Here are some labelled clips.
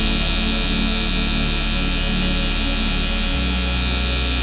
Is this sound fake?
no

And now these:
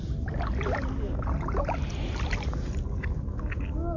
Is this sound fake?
no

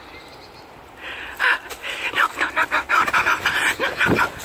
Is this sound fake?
no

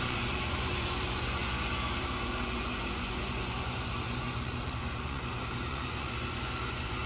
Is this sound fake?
yes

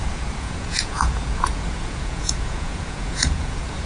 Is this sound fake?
yes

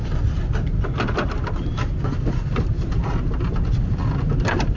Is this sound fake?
no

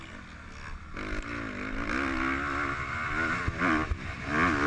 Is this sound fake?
no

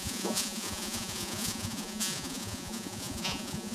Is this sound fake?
yes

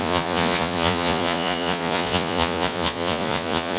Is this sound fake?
yes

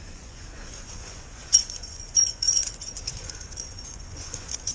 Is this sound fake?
yes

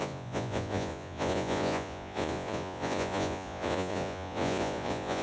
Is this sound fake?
yes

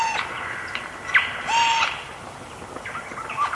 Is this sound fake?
no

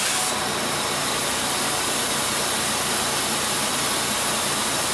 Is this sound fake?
no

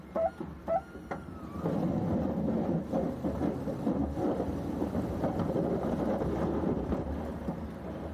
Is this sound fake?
no